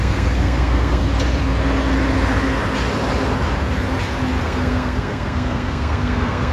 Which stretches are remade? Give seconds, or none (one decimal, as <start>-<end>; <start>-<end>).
0.0-1.0; 4.4-6.5